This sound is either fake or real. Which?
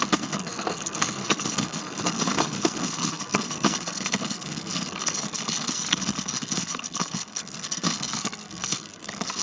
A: fake